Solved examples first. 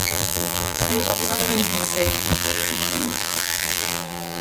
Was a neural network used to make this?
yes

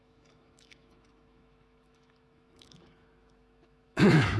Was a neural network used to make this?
yes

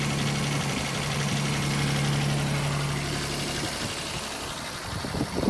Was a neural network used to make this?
no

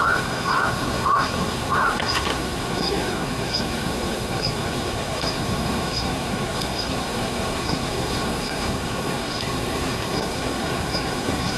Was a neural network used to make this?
yes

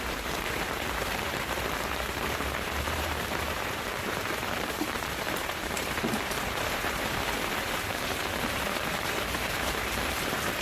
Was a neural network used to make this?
yes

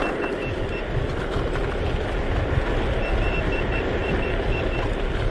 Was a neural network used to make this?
no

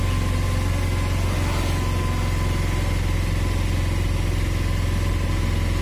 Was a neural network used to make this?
no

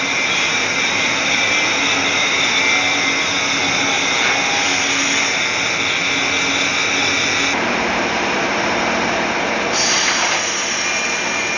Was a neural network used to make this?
no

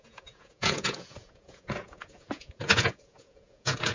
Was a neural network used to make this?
yes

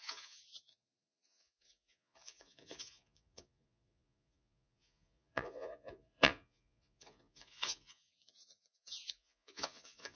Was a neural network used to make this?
yes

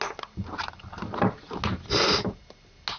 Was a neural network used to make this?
no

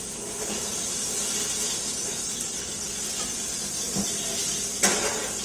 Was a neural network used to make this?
no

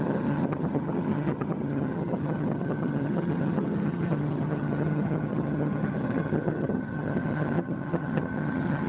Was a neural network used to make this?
yes